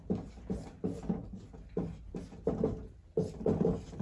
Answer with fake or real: real